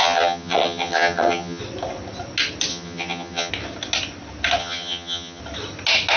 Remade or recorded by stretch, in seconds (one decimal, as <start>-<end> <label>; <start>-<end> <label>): 0.0-1.6 remade; 1.6-2.7 recorded; 2.7-3.5 remade; 3.5-4.6 recorded; 4.6-5.4 remade; 5.4-6.2 recorded